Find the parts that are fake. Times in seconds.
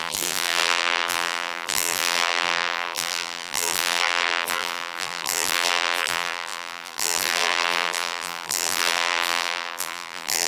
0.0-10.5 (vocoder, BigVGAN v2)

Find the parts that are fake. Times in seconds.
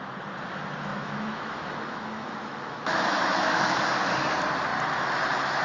0.9-3.9 (autoencoder, DAC-VAE)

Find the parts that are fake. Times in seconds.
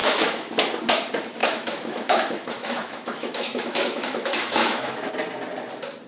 0.0-0.5 (autoencoder, DAC-VAE); 1.4-5.1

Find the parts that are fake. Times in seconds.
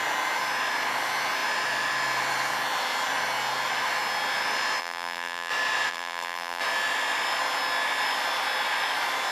4.8-5.5 (vocoder, BigVGAN v2); 5.9-6.6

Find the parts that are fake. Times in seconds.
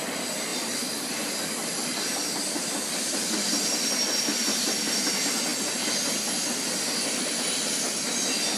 0.5-4.0 (vocoder, BigVGAN v2)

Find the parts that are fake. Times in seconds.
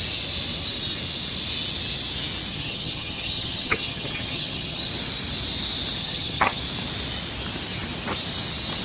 2.5-4.9 (vocoder, HiFi-GAN); 6.0-6.6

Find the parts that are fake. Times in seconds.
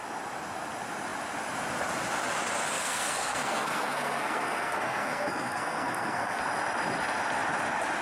2.7-6.4 (codec, SNAC)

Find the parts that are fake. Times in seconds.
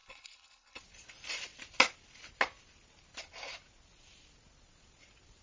0.0-0.8 (codec, HILCodec)